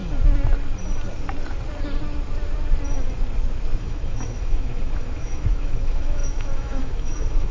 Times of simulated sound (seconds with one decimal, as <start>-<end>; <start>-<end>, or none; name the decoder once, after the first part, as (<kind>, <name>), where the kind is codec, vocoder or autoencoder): 3.8-7.5 (autoencoder, DAC-VAE)